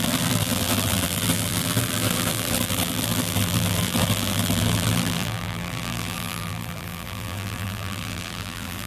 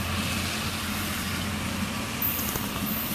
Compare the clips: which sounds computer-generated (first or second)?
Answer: first